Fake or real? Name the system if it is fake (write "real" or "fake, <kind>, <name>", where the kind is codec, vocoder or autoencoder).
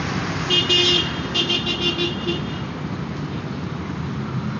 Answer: real